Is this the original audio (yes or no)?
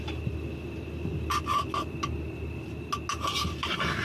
yes